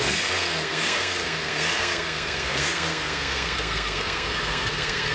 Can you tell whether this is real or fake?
fake